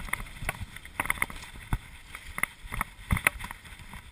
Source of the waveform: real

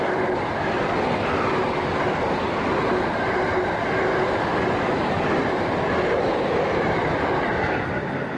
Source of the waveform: real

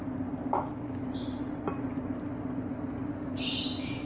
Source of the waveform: real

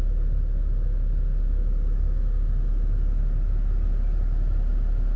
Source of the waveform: real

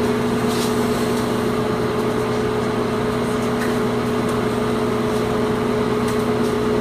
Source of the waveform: real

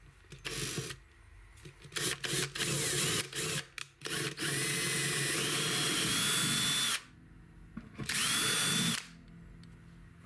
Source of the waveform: real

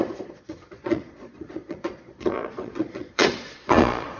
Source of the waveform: fake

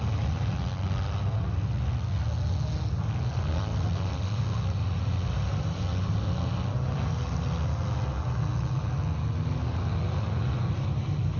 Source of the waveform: real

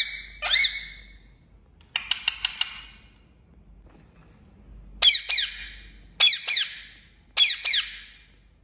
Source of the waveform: real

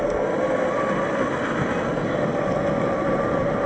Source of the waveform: real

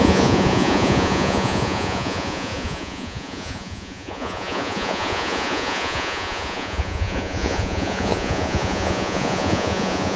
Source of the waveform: fake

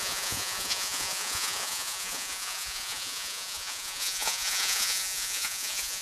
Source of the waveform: fake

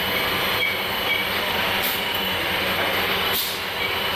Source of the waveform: real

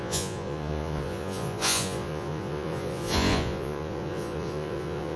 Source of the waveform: fake